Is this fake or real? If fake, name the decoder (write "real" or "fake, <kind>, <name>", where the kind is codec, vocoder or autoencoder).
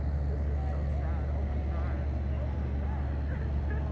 real